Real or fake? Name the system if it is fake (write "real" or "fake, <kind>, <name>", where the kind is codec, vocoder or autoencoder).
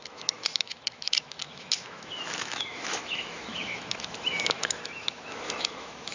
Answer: fake, autoencoder, DAC-VAE